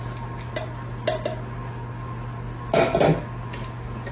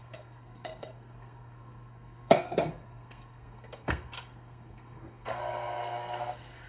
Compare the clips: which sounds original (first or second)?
first